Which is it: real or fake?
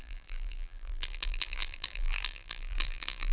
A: fake